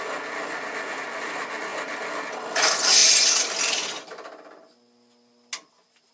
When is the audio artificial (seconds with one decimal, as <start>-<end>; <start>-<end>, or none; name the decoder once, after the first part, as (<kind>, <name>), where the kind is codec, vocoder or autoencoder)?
none